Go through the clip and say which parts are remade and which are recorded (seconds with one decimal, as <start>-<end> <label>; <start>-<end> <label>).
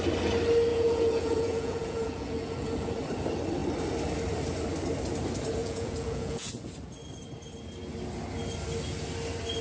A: 0.0-0.7 recorded; 0.7-2.9 remade; 2.9-5.6 recorded; 5.6-6.7 remade; 6.7-9.6 recorded